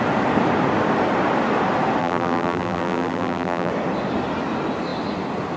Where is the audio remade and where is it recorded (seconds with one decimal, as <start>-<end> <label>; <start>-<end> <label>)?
0.0-2.0 recorded; 2.0-3.7 remade; 3.7-5.6 recorded